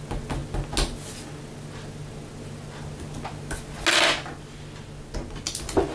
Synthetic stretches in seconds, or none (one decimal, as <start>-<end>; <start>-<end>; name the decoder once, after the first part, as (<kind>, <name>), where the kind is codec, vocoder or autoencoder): none